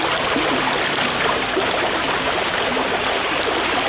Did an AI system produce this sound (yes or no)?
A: no